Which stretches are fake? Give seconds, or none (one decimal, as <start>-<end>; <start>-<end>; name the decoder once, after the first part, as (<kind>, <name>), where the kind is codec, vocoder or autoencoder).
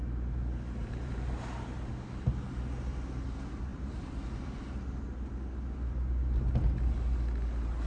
0.8-1.9 (vocoder, BigVGAN v2); 3.7-4.8